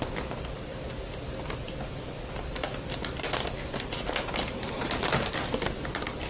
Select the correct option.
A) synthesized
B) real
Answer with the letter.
B